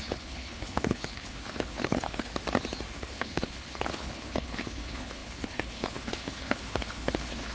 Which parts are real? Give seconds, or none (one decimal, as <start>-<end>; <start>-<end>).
2.3-2.9